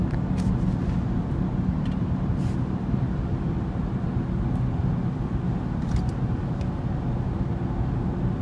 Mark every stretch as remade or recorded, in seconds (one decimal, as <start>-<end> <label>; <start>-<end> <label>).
0.0-8.4 recorded